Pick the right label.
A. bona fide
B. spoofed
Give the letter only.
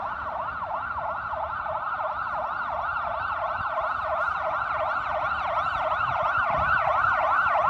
A